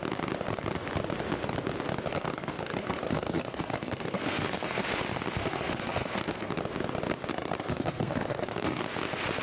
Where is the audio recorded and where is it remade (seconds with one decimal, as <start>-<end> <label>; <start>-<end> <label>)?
0.0-2.1 recorded; 2.1-4.8 remade; 4.8-5.4 recorded; 5.4-6.5 remade; 6.5-7.3 recorded; 7.3-8.8 remade; 8.8-9.4 recorded